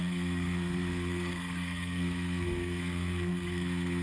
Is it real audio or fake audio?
fake